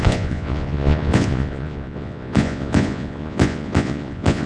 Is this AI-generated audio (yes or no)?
yes